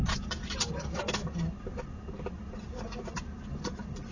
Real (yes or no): yes